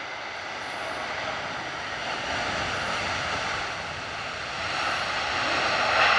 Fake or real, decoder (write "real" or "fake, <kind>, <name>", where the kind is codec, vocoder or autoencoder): real